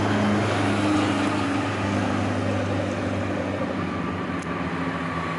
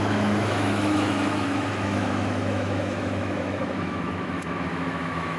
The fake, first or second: second